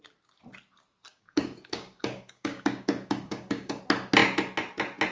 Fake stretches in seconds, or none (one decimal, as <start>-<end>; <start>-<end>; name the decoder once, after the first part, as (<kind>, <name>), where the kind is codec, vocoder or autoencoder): 1.1-3.8 (codec, DAC)